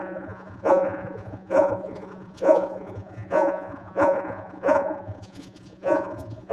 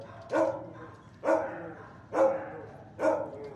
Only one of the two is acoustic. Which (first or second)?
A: second